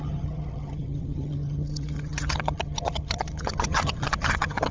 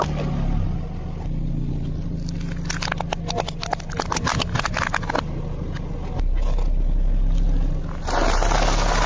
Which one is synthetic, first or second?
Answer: first